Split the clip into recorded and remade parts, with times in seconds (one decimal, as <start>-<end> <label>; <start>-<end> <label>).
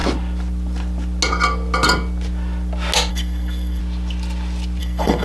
0.0-3.1 recorded; 3.1-3.8 remade; 3.8-4.8 recorded; 4.8-5.2 remade